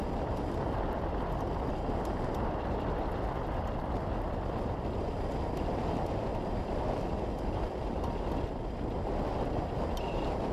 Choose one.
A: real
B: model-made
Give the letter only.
A